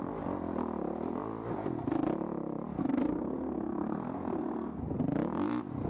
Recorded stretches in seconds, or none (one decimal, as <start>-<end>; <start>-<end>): 0.0-2.8; 4.8-5.9